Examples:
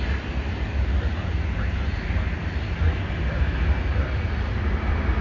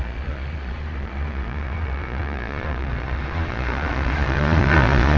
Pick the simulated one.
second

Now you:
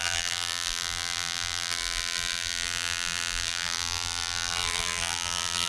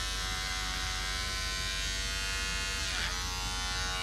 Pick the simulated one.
first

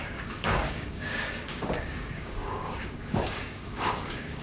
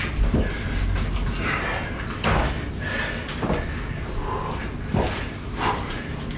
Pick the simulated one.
first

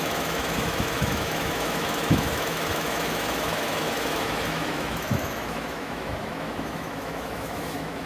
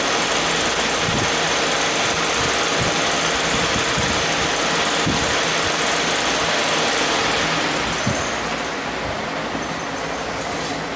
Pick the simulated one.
first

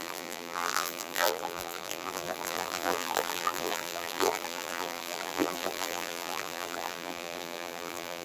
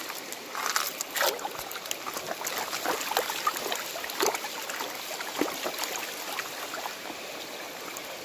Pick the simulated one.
first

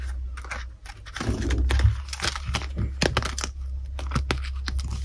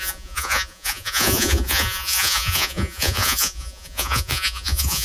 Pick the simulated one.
second